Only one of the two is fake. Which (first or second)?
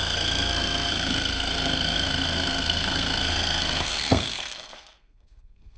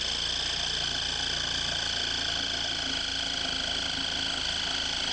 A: first